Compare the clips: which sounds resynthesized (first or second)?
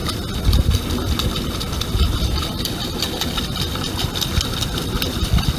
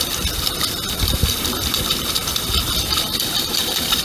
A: second